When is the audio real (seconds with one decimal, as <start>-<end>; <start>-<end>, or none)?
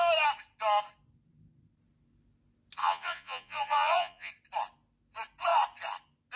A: 0.0-2.8; 4.3-6.4